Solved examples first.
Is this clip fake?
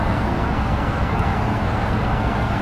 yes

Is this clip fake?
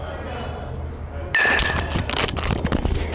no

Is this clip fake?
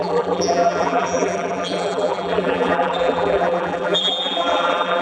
yes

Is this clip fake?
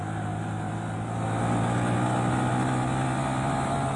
no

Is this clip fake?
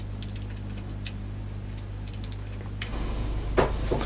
no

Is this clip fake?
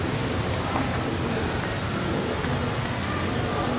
no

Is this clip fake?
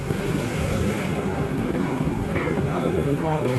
yes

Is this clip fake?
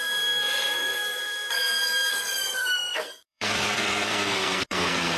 yes